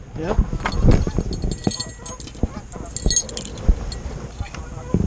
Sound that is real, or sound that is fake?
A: real